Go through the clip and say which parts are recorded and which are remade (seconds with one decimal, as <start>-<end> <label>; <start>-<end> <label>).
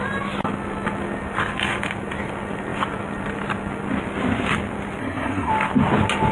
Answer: 0.0-5.0 recorded; 5.0-5.5 remade; 5.5-6.3 recorded